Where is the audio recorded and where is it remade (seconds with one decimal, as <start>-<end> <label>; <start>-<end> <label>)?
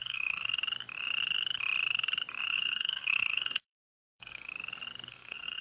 0.0-0.6 remade; 0.6-2.5 recorded; 2.5-4.5 remade; 4.5-5.1 recorded; 5.1-5.6 remade